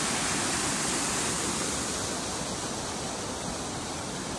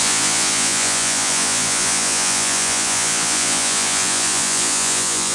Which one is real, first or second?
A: first